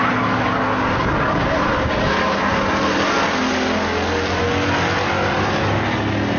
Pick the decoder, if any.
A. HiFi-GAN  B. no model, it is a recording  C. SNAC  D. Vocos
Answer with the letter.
B